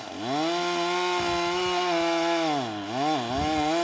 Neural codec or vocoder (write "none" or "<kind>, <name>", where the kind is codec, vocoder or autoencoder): none